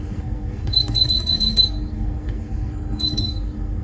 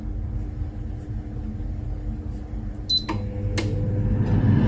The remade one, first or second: first